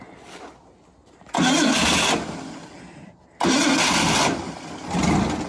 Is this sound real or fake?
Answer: real